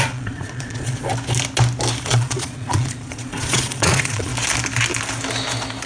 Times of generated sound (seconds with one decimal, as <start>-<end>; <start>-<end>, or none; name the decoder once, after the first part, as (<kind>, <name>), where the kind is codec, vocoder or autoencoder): 0.0-1.1 (vocoder, Vocos); 2.0-4.3